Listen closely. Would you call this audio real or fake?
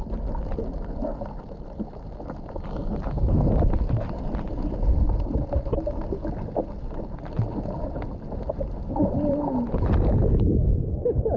real